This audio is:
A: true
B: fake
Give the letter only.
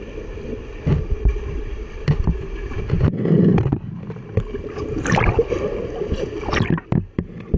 A